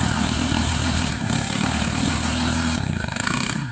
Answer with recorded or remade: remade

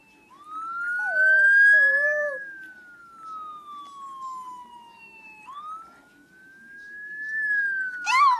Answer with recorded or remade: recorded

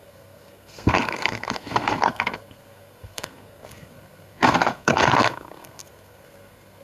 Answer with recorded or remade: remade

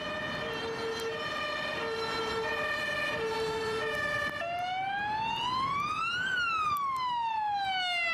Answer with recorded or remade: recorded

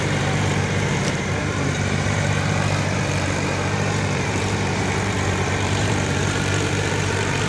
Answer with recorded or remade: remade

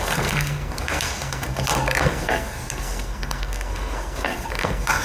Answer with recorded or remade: remade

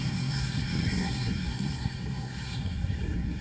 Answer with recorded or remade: remade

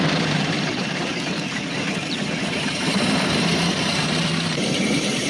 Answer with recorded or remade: remade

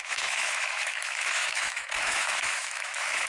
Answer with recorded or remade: remade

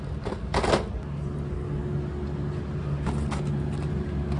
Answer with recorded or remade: recorded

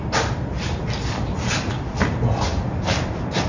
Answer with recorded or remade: recorded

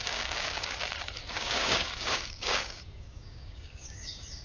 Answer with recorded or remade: remade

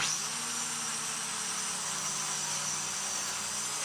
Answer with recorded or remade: recorded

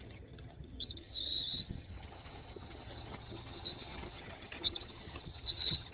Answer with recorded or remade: remade